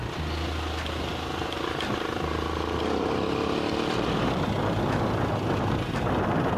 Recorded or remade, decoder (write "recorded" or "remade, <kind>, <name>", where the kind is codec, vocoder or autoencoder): recorded